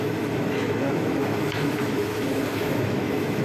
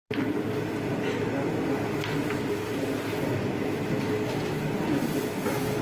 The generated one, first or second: first